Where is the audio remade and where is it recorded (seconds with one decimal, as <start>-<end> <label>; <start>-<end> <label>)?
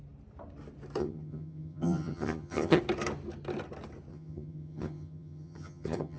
0.0-1.0 recorded; 1.0-2.8 remade; 2.8-4.1 recorded; 4.1-6.2 remade